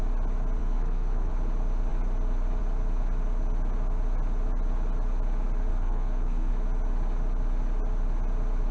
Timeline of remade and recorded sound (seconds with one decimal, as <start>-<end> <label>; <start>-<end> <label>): 0.0-0.6 recorded; 0.6-1.3 remade; 1.3-5.7 recorded; 5.7-6.5 remade; 6.5-8.7 recorded